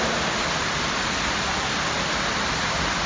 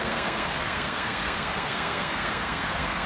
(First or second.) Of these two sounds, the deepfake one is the second